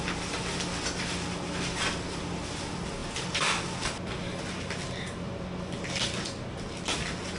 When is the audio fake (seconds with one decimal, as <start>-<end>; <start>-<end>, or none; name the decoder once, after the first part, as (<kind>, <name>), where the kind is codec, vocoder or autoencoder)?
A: none